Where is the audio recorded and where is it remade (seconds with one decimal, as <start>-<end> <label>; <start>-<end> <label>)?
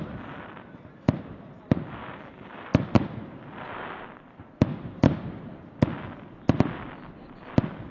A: 0.0-2.7 recorded; 2.7-3.4 remade; 3.4-4.7 recorded; 4.7-5.7 remade; 5.7-7.9 recorded